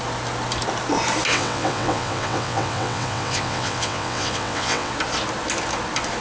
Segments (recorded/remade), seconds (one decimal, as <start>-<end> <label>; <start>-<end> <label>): 0.0-1.3 recorded; 1.3-4.9 remade; 4.9-6.2 recorded